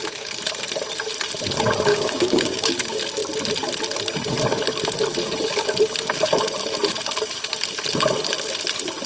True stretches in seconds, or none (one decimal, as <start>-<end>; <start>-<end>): 0.0-1.9; 2.7-9.1